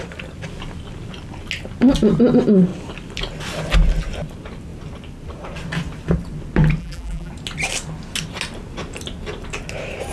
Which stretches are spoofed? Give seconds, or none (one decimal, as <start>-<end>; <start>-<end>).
6.8-7.3